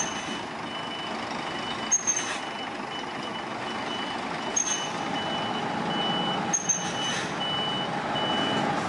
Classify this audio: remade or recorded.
recorded